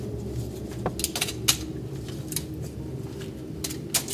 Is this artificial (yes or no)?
no